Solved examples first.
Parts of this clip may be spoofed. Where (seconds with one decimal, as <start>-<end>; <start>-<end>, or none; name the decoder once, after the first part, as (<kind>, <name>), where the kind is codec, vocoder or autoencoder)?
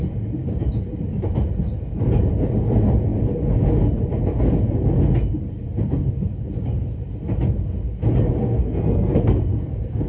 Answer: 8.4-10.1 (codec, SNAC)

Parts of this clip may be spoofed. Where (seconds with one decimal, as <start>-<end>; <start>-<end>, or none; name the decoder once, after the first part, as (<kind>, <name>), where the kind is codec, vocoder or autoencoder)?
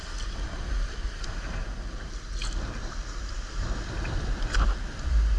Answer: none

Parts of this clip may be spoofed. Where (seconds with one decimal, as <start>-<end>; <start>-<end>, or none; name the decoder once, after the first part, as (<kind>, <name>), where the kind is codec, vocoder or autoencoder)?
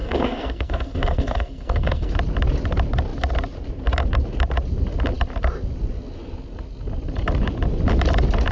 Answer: 0.0-2.1 (codec, SNAC)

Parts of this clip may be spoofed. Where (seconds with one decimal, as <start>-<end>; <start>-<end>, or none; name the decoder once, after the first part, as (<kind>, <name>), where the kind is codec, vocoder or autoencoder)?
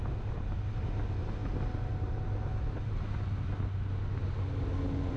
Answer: none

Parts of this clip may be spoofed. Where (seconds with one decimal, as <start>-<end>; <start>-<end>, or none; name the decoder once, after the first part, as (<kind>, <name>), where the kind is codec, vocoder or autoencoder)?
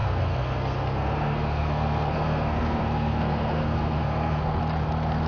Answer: 0.0-4.6 (codec, SNAC)